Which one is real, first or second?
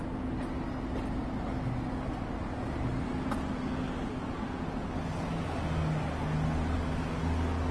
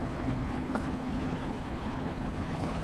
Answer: first